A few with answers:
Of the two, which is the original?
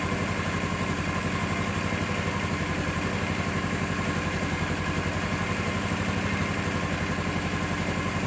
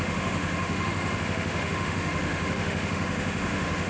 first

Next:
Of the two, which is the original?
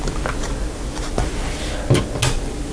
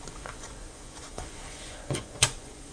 first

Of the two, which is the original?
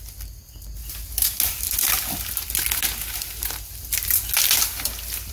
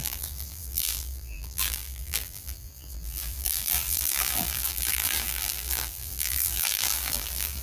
first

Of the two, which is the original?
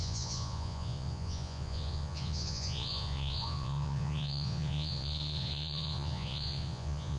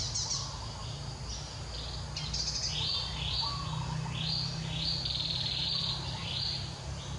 second